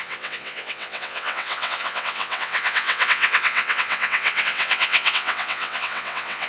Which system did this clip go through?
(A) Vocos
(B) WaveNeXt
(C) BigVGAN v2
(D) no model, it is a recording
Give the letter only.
B